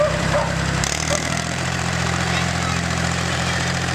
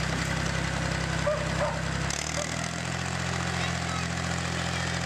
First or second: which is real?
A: second